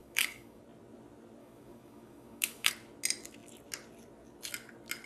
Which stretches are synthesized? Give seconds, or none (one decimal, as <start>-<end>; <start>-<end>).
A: 0.0-0.6; 1.4-2.7